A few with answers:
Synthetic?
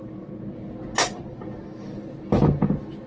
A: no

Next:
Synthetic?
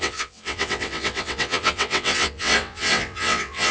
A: yes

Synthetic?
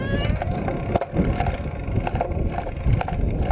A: no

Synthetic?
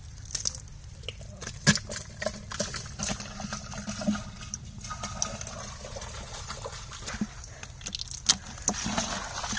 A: no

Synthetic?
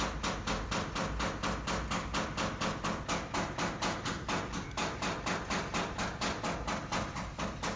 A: no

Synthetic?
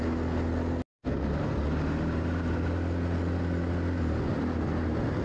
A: no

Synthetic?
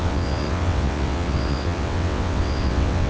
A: yes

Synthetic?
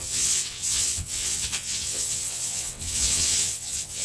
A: yes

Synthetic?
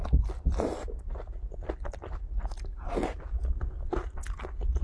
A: no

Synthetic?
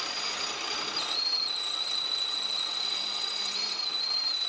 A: no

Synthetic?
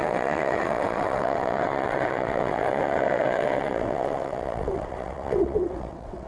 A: yes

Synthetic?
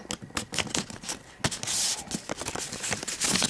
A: no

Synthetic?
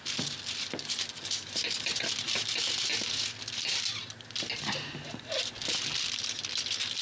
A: no